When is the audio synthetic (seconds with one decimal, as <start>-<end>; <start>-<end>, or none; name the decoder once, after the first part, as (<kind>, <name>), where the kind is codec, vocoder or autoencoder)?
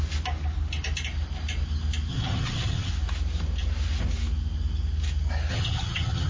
2.1-2.9 (vocoder, HiFi-GAN); 5.5-6.3